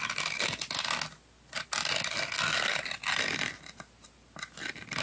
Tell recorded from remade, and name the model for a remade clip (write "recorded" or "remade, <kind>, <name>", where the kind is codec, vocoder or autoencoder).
recorded